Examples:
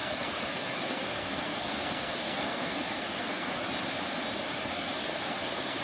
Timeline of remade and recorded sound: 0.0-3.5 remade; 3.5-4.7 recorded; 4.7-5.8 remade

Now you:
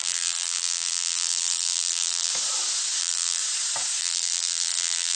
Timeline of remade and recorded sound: 0.0-2.3 remade; 2.3-3.0 recorded; 3.0-3.4 remade; 3.4-4.0 recorded; 4.0-5.2 remade

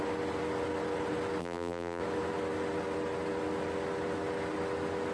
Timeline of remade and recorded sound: 0.0-1.4 recorded; 1.4-2.0 remade; 2.0-5.1 recorded